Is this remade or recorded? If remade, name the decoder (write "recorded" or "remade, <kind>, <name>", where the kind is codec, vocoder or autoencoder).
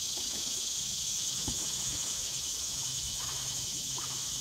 remade, autoencoder, DAC-VAE